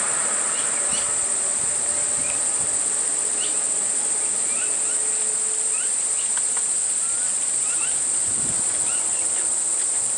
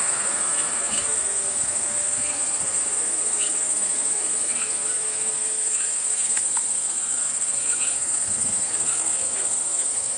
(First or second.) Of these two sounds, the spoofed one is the second